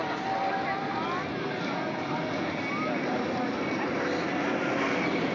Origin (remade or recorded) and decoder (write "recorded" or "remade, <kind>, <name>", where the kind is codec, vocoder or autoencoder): recorded